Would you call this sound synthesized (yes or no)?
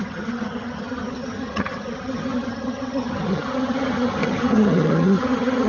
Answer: yes